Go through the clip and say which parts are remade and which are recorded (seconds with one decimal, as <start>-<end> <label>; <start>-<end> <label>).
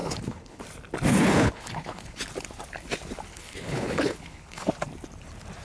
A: 0.0-0.6 remade; 0.6-1.1 recorded; 1.1-2.2 remade; 2.2-3.3 recorded; 3.3-4.7 remade; 4.7-5.6 recorded